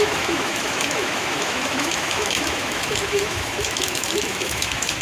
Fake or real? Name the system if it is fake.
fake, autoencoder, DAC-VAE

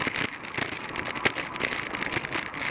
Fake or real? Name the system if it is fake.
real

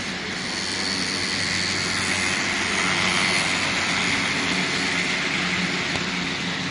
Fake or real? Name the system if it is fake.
real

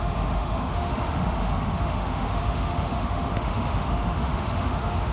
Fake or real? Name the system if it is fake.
fake, autoencoder, DAC-VAE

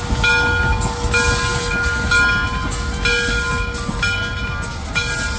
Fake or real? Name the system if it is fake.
real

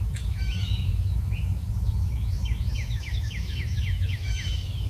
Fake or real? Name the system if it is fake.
fake, autoencoder, DAC-VAE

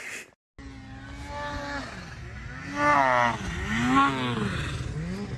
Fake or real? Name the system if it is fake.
real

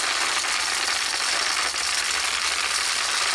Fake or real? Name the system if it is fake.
real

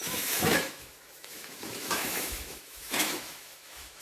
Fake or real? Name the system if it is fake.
fake, autoencoder, DAC-VAE